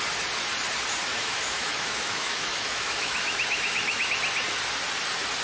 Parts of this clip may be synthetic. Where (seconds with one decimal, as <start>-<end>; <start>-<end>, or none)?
1.1-4.1